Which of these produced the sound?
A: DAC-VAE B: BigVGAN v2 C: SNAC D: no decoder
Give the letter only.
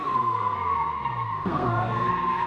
C